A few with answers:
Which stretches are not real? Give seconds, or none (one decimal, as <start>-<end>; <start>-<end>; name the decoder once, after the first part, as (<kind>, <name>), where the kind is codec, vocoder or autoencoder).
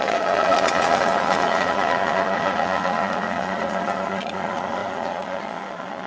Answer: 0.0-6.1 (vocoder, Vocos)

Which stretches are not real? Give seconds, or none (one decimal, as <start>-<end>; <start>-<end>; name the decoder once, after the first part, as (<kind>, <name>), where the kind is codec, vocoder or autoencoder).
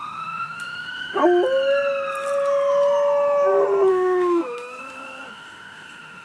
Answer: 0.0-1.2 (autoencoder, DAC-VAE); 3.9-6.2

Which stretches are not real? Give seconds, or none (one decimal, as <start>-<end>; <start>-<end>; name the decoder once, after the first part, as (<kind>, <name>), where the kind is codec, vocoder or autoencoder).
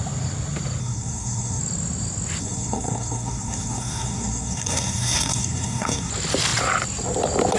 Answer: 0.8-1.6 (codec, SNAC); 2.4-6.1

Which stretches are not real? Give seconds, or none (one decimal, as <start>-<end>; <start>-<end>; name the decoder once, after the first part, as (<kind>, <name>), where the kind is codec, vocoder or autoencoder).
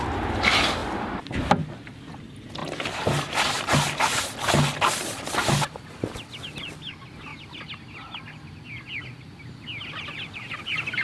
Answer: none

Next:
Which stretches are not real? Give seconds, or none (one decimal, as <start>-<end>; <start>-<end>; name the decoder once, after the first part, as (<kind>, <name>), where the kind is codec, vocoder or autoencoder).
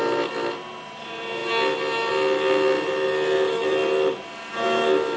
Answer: none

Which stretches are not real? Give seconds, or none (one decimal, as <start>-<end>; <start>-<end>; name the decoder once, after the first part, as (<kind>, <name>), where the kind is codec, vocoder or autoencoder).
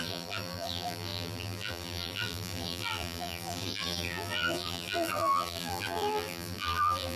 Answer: 0.0-7.2 (vocoder, BigVGAN v2)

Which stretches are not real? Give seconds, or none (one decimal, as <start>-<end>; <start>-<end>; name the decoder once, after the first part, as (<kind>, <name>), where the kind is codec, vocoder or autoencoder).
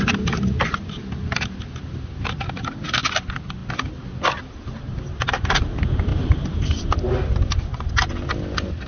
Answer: none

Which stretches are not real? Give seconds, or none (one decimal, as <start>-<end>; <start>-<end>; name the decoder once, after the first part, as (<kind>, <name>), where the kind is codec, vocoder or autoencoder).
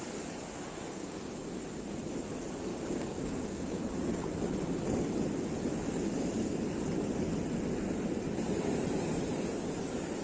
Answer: 0.9-1.4 (codec, DAC); 2.7-3.8